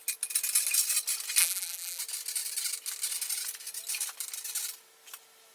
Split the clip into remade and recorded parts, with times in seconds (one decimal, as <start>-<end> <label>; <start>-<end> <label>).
0.0-1.4 recorded; 1.4-2.0 remade; 2.0-5.5 recorded